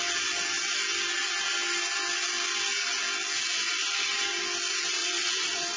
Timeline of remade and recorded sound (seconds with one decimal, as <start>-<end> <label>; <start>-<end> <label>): 0.0-5.0 recorded; 5.0-5.8 remade